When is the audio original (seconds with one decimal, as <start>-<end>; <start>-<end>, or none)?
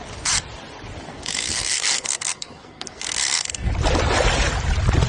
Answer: 0.0-1.1; 3.7-5.1